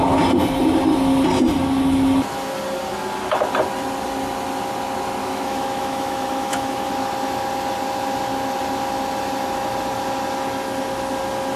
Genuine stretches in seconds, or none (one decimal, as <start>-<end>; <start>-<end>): 0.0-5.2; 6.9-11.6